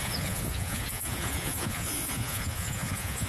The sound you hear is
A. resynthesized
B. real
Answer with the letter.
A